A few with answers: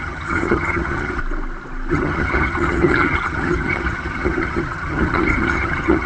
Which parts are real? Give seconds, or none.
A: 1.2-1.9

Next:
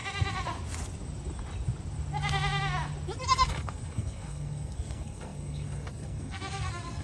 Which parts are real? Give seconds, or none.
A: 0.0-3.5

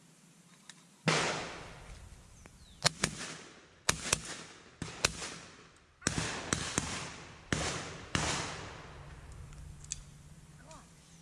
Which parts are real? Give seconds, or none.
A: 0.0-11.2

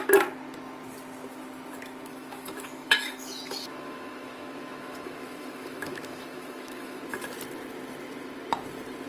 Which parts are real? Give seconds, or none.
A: 0.0-2.1; 7.0-9.1

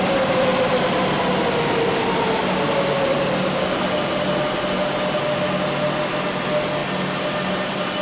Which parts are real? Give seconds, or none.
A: 0.0-8.0

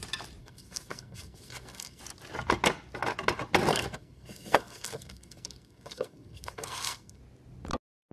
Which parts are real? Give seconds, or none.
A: 0.0-0.4; 2.0-3.7; 7.2-8.1